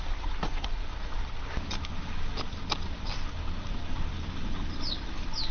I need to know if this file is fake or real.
real